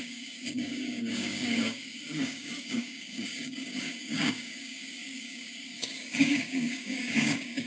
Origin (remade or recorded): remade